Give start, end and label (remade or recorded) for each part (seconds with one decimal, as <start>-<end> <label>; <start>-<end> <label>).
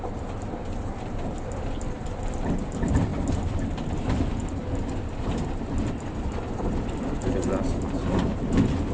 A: 0.0-8.9 recorded